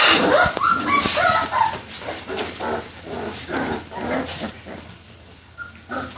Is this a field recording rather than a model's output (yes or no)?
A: no